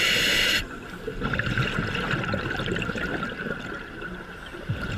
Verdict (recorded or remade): recorded